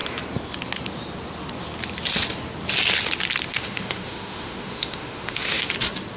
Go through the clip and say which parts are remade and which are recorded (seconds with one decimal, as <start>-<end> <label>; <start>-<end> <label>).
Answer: 0.0-3.5 recorded; 3.5-5.7 remade; 5.7-6.2 recorded